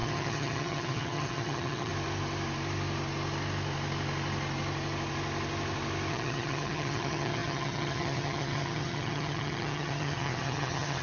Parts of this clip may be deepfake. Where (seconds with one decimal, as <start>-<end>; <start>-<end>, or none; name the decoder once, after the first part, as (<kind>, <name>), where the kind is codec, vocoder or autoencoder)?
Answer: 0.0-1.9 (vocoder, HiFi-GAN); 6.1-11.0